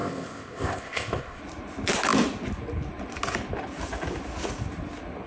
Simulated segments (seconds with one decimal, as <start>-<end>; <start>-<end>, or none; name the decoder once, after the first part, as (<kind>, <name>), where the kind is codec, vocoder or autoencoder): 0.0-1.4 (codec, ZipCodec)